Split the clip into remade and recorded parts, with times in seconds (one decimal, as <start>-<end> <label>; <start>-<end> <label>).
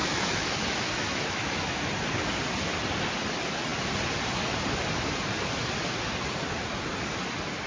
0.0-1.9 remade; 1.9-7.7 recorded